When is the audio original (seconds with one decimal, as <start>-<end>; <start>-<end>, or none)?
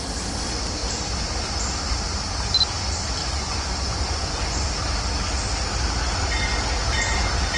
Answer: 0.0-3.2; 4.6-7.6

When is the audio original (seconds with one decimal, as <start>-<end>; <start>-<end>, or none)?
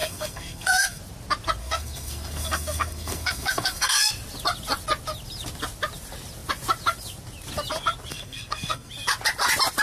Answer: 1.0-1.6; 4.1-8.1; 8.9-9.8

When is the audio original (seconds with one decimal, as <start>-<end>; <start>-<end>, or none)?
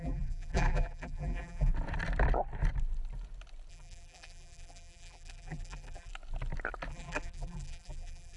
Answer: 1.7-3.7; 6.1-6.9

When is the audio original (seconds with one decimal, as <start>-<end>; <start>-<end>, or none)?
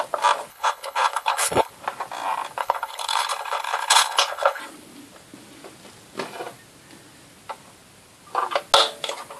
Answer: 0.0-0.5; 1.7-2.6; 4.6-9.4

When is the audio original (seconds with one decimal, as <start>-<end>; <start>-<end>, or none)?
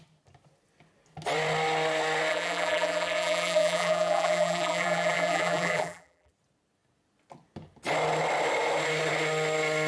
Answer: 0.0-2.3; 6.3-9.9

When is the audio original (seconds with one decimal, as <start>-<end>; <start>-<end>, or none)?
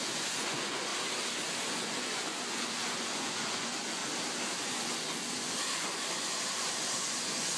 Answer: 0.9-1.7; 4.0-4.6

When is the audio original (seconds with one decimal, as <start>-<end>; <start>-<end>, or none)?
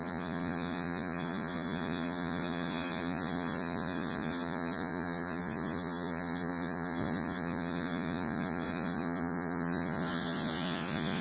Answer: none